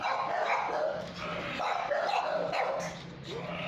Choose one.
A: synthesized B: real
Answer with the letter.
B